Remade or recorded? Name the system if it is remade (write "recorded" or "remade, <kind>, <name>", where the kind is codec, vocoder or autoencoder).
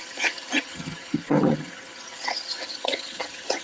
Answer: remade, vocoder, HiFi-GAN